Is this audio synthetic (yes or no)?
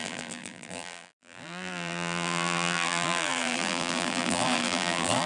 yes